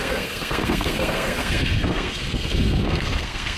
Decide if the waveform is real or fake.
fake